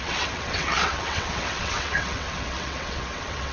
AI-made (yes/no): yes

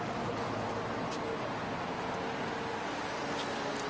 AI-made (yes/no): no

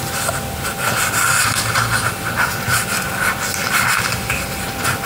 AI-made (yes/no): no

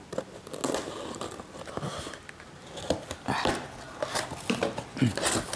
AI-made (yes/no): no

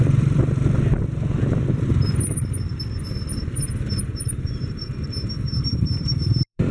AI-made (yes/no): yes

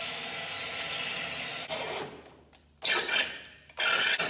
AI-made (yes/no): no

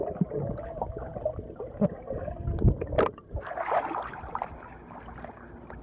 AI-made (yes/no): no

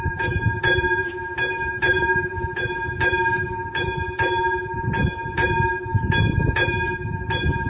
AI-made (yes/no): yes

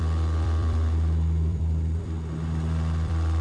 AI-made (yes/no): yes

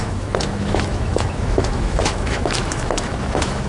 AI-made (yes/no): yes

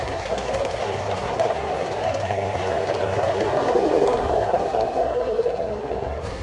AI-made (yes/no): yes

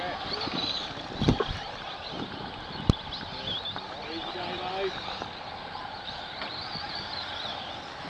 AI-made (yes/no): no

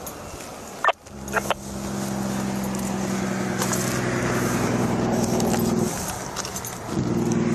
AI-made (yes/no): no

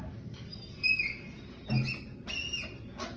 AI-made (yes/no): no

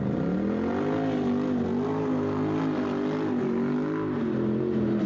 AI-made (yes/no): no